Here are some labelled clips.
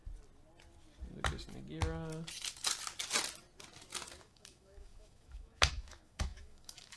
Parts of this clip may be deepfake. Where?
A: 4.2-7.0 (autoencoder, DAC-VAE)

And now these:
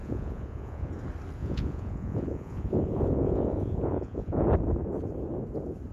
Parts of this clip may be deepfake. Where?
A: 0.0-0.9 (vocoder, Vocos); 1.4-4.4

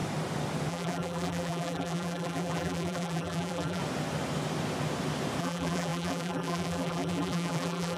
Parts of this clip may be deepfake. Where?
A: 0.7-3.8 (vocoder, BigVGAN v2); 5.4-8.0